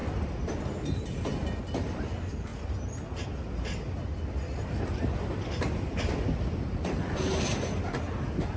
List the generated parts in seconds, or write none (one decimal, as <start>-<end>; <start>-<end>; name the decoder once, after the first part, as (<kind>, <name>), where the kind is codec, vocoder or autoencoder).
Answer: 0.0-2.5 (vocoder, BigVGAN v2); 4.6-8.6